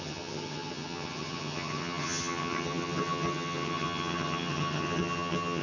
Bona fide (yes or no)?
no